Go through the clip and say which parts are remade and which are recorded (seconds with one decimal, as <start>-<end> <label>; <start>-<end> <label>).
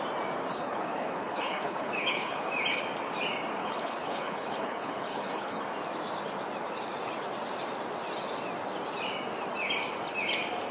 0.0-0.5 recorded; 0.5-2.5 remade; 2.5-3.6 recorded; 3.6-5.6 remade; 5.6-10.7 recorded